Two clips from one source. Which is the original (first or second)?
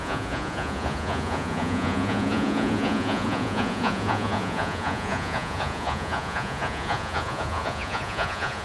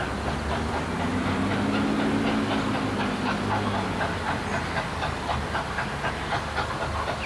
second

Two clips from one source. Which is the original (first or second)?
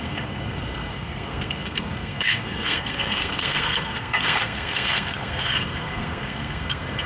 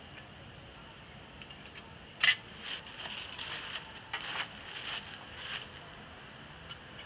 second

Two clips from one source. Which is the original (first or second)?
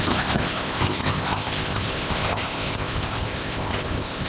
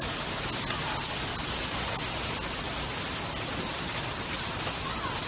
second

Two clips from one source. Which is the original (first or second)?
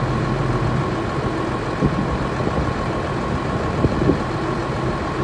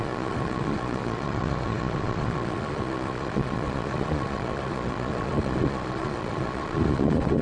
first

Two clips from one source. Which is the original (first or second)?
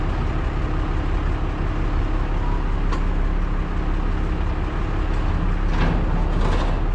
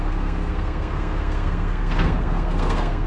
first